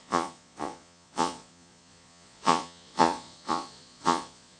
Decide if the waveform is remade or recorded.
remade